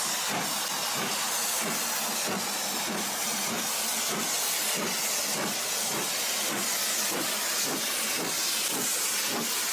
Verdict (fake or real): real